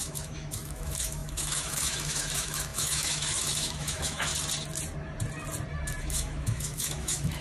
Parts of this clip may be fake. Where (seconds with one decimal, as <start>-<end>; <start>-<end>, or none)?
0.0-4.3; 6.0-7.4